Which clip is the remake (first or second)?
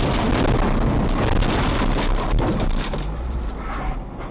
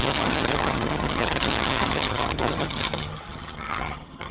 second